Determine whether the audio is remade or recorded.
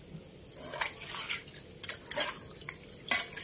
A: recorded